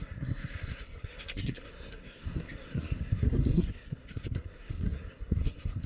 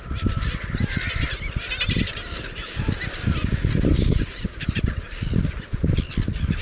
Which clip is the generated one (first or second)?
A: first